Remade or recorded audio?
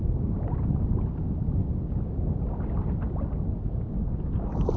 recorded